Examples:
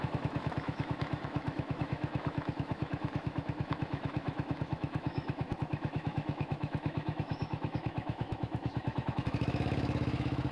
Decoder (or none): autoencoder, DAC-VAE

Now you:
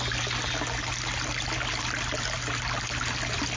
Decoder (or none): none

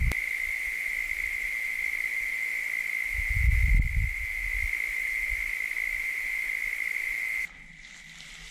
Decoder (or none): none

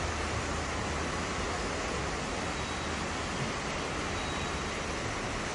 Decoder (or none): none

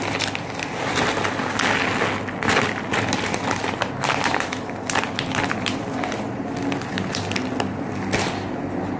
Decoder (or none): none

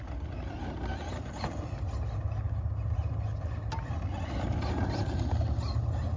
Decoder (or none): none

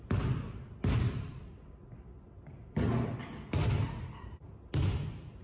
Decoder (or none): none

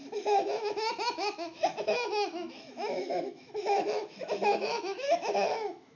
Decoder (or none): autoencoder, DAC-VAE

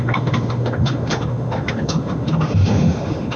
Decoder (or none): autoencoder, DAC-VAE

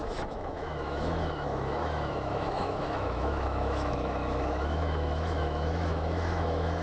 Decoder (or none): autoencoder, DAC-VAE